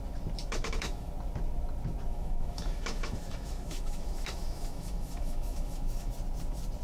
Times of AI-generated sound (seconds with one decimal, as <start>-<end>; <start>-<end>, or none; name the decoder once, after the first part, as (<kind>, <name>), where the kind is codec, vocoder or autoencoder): 0.4-1.1 (autoencoder, DAC-VAE); 2.1-6.1